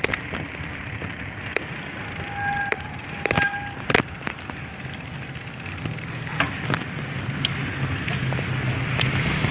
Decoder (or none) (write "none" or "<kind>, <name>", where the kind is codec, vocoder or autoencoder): none